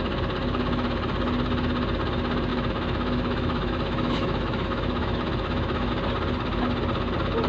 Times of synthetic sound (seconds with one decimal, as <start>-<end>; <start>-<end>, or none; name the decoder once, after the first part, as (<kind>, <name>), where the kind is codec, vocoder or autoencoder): 2.5-5.9 (autoencoder, DAC-VAE)